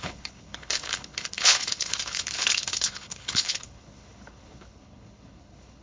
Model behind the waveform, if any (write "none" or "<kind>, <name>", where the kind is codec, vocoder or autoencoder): codec, HILCodec